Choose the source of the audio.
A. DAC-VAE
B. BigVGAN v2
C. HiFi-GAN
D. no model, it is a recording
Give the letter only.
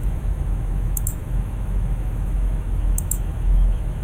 A